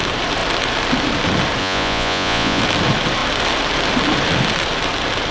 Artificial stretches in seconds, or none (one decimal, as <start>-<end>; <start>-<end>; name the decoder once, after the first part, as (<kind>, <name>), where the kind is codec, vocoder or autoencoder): 1.6-2.6 (vocoder, Vocos)